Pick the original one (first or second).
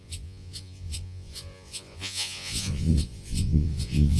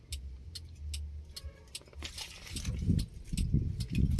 second